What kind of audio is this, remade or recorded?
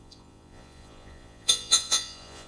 remade